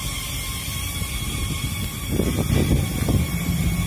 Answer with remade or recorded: recorded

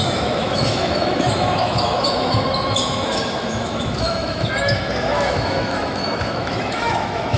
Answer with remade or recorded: remade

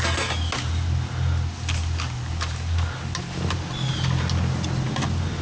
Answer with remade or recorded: recorded